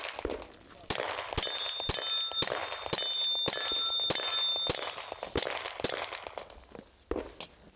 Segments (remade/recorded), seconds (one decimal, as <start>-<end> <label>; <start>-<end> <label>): 0.0-7.8 recorded